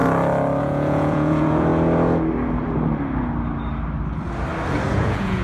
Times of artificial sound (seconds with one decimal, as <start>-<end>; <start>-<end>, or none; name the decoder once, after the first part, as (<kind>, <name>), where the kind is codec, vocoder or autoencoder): 0.6-1.7 (vocoder, Vocos); 4.9-5.4